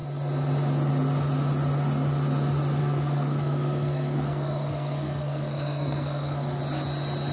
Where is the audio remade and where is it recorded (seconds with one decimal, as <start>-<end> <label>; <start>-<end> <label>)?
0.0-2.8 recorded; 2.8-6.6 remade; 6.6-7.3 recorded